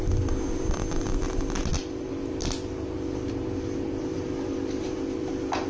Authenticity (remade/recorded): recorded